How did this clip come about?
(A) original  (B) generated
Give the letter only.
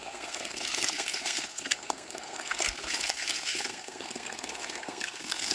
B